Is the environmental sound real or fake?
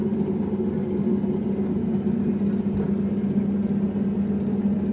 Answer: real